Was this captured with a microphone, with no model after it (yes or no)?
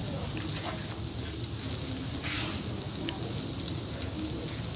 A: yes